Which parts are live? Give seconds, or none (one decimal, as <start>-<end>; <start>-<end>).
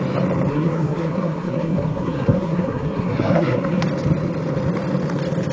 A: 0.0-0.5; 3.8-5.5